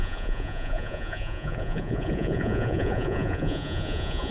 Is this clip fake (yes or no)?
yes